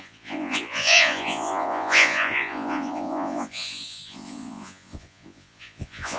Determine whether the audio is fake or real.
fake